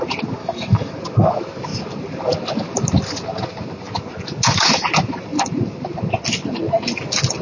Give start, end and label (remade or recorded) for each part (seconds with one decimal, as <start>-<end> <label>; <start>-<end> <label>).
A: 0.0-0.4 recorded; 0.4-0.9 remade; 0.9-7.4 recorded